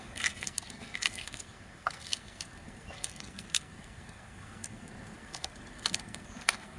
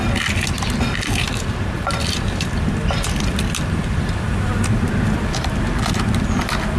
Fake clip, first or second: first